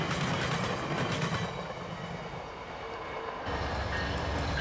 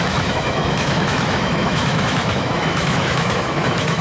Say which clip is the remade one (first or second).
second